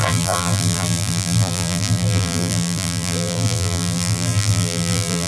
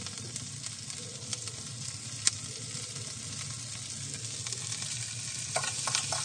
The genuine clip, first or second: second